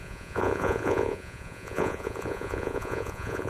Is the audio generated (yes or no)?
yes